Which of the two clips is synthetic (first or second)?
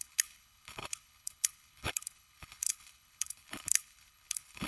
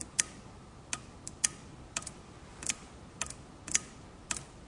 first